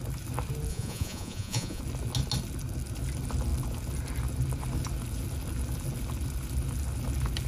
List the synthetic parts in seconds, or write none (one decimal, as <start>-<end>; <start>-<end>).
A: 0.7-1.8